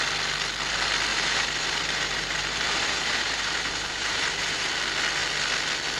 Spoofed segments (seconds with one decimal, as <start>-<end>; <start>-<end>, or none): 1.1-4.7